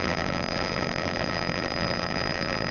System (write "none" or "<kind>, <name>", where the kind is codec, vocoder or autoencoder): vocoder, BigVGAN v2